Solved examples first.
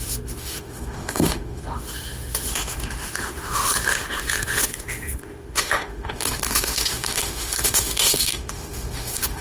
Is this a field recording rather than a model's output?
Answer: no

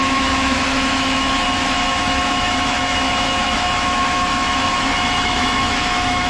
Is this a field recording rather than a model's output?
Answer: no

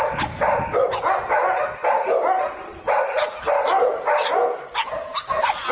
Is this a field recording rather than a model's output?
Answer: yes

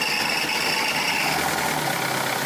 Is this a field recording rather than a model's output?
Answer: yes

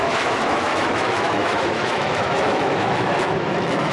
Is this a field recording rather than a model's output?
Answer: no